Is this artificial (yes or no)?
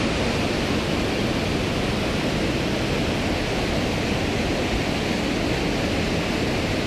no